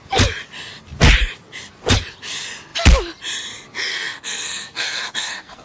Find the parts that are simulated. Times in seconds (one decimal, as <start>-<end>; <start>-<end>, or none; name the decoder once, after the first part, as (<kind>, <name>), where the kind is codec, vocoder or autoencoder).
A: 3.9-5.6 (codec, SNAC)